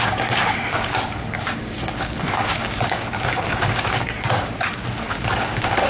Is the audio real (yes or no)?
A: no